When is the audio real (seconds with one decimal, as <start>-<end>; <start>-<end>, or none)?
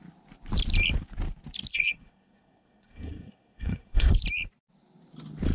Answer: 0.0-1.7; 4.1-5.5